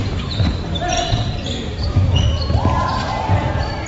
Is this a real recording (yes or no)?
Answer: no